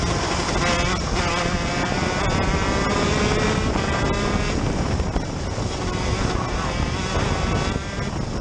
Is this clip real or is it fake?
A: real